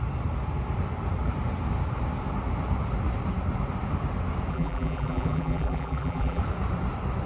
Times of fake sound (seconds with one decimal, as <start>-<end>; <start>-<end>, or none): 4.5-6.4